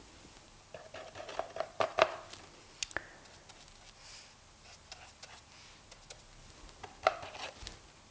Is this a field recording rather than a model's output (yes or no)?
yes